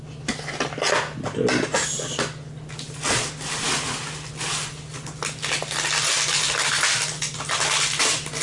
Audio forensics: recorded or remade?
recorded